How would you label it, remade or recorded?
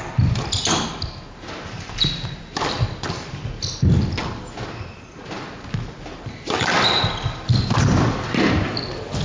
recorded